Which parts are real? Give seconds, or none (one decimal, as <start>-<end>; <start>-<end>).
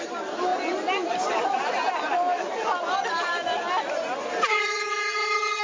0.0-4.5